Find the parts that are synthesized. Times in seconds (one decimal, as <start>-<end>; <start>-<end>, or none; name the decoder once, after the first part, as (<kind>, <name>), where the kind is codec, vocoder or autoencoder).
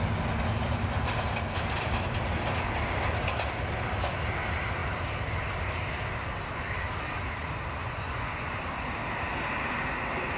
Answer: 7.8-8.6 (vocoder, Vocos)